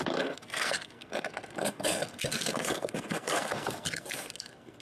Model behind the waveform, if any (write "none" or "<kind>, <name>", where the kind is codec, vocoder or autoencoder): codec, SNAC